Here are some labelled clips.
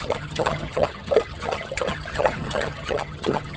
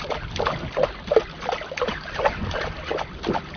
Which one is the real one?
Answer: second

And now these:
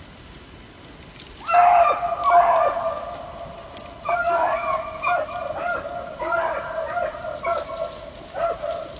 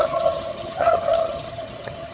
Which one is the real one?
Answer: first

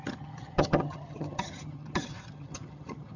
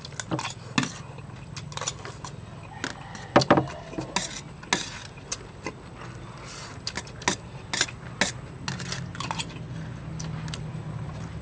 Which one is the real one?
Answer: second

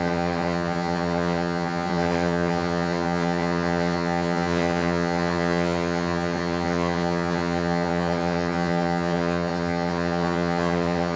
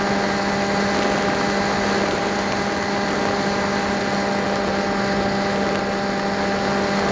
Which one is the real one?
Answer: second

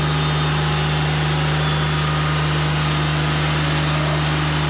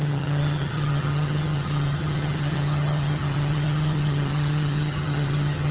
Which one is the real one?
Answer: first